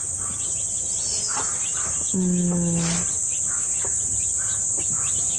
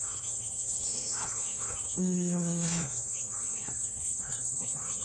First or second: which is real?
first